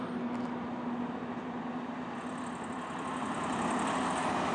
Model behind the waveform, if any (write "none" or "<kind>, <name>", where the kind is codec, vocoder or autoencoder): none